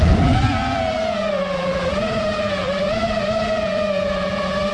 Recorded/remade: remade